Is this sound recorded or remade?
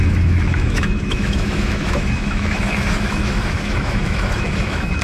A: remade